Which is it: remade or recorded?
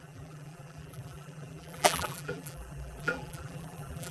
remade